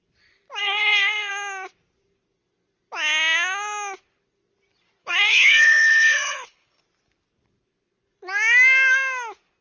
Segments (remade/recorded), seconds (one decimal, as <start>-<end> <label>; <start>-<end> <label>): 0.0-0.6 recorded; 0.6-1.3 remade; 1.3-5.0 recorded; 5.0-6.8 remade; 6.8-9.6 recorded